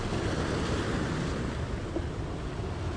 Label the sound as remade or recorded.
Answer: recorded